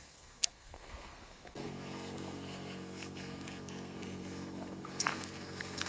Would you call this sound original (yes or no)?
no